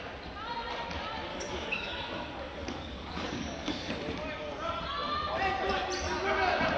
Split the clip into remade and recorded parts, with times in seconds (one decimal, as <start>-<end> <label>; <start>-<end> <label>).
0.0-1.3 recorded; 1.3-3.9 remade; 3.9-6.8 recorded